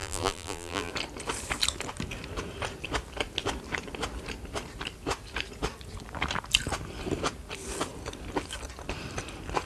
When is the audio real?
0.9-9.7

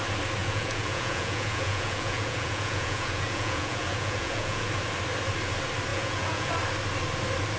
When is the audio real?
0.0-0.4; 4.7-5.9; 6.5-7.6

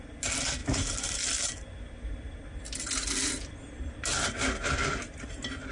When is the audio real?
0.0-5.7

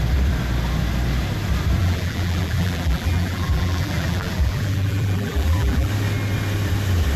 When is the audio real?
0.0-1.8; 5.9-7.2

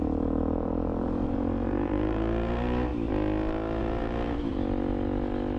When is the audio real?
2.9-3.8; 4.5-5.6

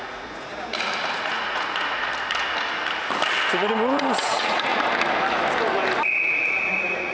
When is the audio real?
0.5-1.1; 2.1-3.5; 4.7-6.3